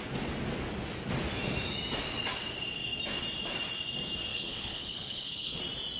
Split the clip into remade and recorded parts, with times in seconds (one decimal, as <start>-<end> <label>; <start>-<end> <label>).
0.0-4.3 recorded; 4.3-5.6 remade; 5.6-6.0 recorded